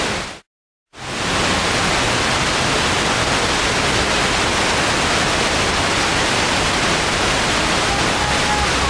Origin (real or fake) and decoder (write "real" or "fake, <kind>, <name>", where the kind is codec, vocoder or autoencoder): real